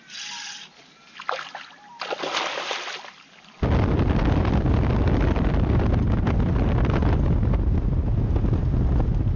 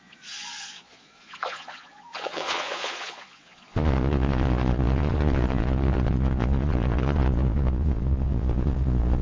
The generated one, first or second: second